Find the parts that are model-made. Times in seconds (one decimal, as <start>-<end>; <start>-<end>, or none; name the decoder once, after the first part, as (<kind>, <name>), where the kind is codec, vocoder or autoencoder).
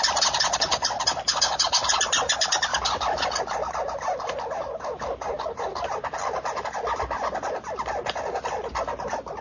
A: none